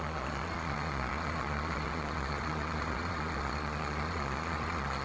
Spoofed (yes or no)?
yes